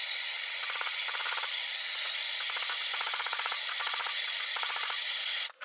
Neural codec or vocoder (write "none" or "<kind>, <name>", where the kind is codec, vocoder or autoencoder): vocoder, Vocos